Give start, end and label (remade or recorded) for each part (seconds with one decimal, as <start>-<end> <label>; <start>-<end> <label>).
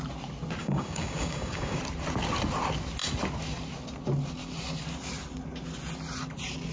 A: 0.0-0.6 recorded; 0.6-1.8 remade; 1.8-6.7 recorded